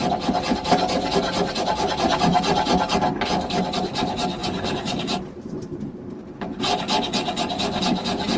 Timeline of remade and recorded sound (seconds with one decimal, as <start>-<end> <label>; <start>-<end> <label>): 0.0-4.4 recorded; 4.4-6.4 remade; 6.4-8.4 recorded